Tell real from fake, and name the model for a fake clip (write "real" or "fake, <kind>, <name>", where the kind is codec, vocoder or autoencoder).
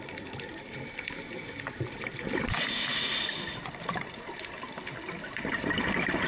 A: fake, vocoder, BigVGAN v2